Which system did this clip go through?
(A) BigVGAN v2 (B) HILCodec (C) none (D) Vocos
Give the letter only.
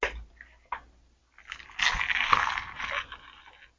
C